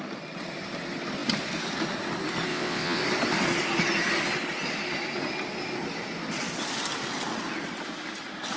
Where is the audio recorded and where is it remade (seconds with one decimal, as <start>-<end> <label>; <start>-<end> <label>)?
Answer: 0.0-2.5 recorded; 2.5-3.0 remade; 3.0-8.6 recorded